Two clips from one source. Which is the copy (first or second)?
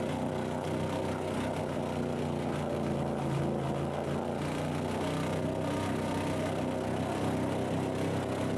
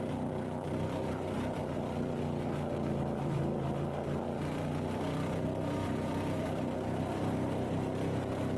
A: second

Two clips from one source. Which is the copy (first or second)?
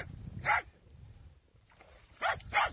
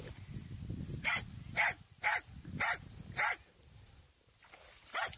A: first